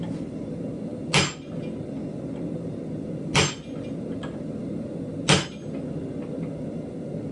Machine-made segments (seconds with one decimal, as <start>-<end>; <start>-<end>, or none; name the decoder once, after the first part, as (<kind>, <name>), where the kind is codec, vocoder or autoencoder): none